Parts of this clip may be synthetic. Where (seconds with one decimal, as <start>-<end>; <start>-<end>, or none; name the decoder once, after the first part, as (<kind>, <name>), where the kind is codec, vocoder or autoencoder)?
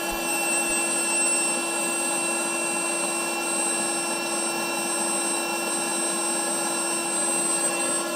none